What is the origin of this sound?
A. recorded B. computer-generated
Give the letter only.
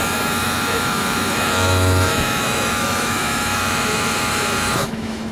B